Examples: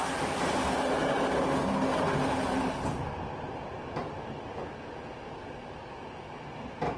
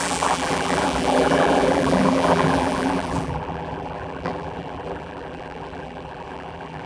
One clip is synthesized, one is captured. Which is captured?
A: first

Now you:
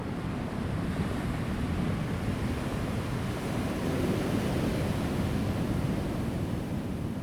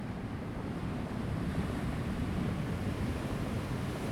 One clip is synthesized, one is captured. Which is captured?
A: first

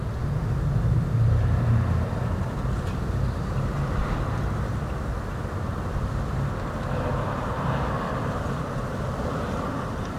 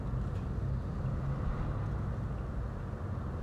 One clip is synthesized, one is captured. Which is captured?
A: second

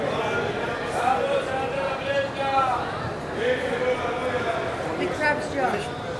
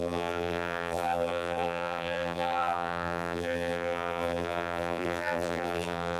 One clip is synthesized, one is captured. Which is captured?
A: first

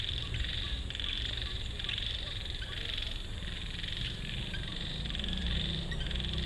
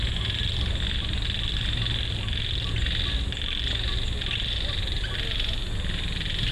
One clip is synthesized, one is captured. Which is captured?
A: second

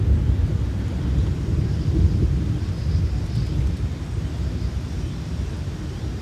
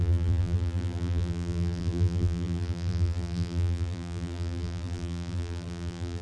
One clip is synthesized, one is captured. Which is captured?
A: first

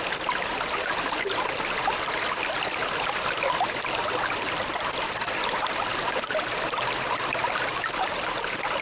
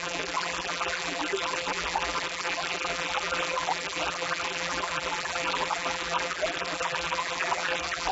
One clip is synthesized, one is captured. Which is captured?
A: first